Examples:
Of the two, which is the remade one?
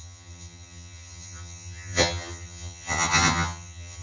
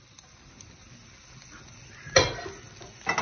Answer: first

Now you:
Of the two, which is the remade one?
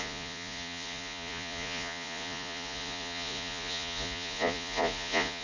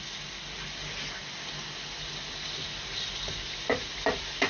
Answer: first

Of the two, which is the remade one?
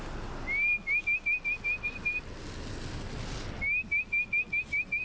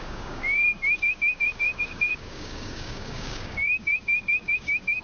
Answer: second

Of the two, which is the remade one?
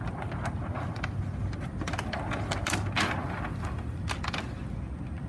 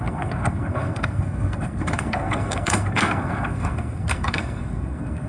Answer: second